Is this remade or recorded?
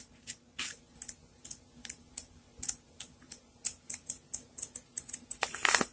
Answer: recorded